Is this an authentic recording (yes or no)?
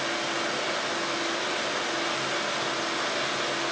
yes